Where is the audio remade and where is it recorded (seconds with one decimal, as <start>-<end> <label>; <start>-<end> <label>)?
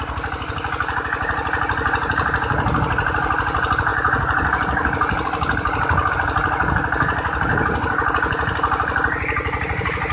0.0-10.1 recorded